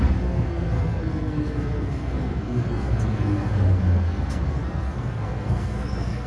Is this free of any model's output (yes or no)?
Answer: no